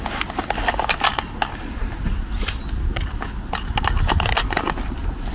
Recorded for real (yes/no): yes